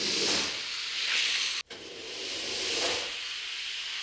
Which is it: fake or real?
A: real